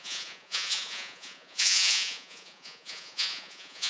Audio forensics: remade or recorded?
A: remade